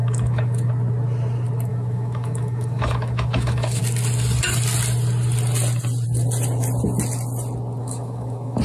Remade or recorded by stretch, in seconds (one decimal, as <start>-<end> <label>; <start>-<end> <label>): 0.0-0.7 remade; 0.7-1.7 recorded; 1.7-3.8 remade; 3.8-7.8 recorded; 7.8-8.6 remade